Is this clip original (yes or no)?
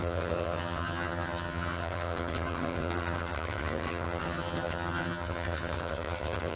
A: no